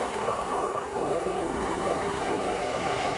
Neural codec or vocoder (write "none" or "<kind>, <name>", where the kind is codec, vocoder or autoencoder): codec, SNAC